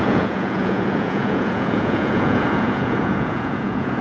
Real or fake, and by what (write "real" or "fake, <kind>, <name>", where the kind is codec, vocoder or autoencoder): fake, vocoder, Vocos